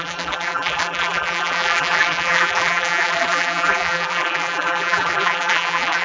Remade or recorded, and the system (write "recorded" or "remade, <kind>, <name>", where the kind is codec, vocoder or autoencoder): remade, vocoder, BigVGAN v2